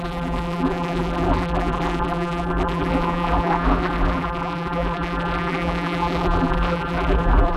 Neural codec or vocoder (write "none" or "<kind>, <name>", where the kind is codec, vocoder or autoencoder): vocoder, BigVGAN v2